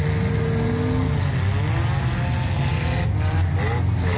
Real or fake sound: real